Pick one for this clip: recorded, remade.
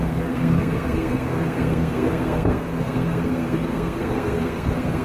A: remade